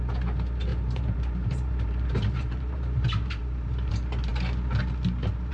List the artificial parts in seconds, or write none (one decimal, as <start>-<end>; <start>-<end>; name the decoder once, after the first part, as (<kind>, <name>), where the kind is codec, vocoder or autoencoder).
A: 0.7-3.9 (vocoder, BigVGAN v2)